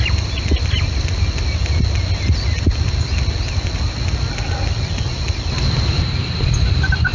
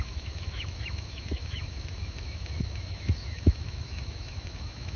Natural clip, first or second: first